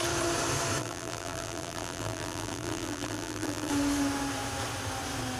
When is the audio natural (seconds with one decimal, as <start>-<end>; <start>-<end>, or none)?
0.0-0.8; 3.7-5.4